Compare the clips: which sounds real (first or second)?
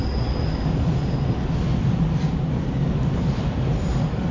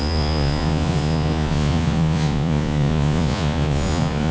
first